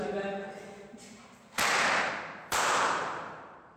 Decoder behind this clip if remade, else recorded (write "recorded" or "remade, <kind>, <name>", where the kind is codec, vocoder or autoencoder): remade, vocoder, BigVGAN v2